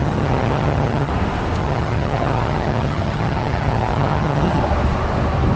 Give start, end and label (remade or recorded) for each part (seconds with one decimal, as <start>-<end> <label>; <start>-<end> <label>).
0.0-1.1 remade; 1.1-1.6 recorded; 1.6-4.6 remade; 4.6-5.6 recorded